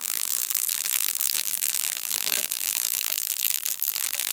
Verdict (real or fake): fake